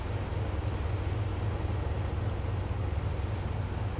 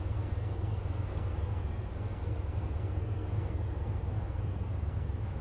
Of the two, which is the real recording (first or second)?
first